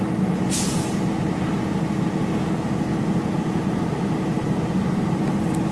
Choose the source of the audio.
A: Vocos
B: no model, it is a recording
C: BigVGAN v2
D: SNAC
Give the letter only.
B